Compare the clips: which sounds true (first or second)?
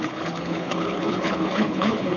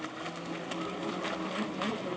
second